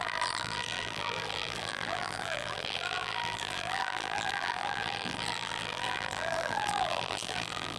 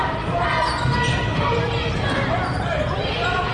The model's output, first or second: first